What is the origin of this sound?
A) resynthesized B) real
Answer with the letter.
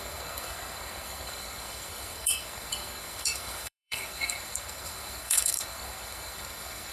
A